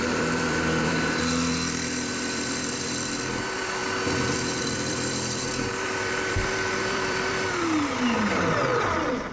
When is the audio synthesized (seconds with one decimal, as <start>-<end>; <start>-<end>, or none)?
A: 0.0-3.8; 4.6-9.3